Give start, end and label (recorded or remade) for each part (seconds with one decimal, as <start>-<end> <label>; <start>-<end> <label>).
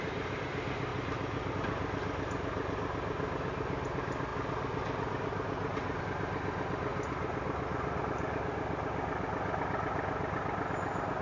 0.0-0.9 recorded; 0.9-1.5 remade; 1.5-6.9 recorded; 6.9-8.0 remade; 8.0-11.2 recorded